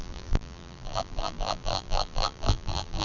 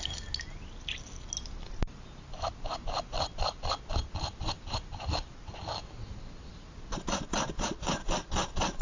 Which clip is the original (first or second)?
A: second